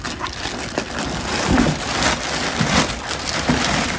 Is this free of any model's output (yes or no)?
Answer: yes